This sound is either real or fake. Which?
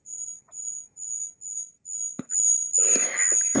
real